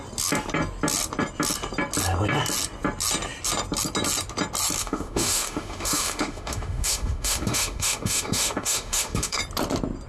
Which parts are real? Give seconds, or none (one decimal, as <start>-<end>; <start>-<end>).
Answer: 0.0-4.8; 9.4-10.1